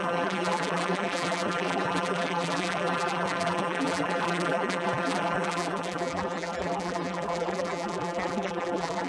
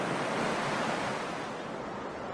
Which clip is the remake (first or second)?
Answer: first